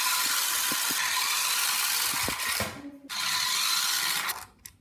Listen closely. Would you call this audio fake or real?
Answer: real